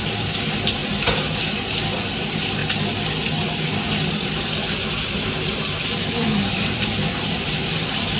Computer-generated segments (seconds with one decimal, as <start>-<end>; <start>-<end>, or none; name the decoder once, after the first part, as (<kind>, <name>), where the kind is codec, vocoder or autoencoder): 0.0-0.8 (vocoder, BigVGAN v2); 2.0-2.6; 4.1-8.2